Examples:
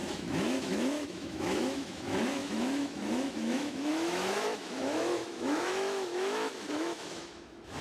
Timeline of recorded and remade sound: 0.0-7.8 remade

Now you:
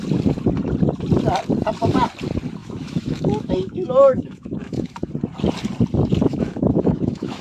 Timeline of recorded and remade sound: 0.0-2.6 recorded; 2.6-5.1 remade; 5.1-6.3 recorded; 6.3-7.4 remade

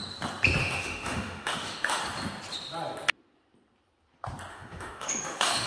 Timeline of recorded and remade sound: 0.0-0.6 recorded; 0.6-2.0 remade; 2.0-4.5 recorded; 4.5-5.7 remade

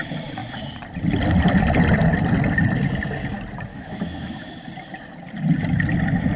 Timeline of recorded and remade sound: 0.0-3.7 recorded; 3.7-4.5 remade; 4.5-6.4 recorded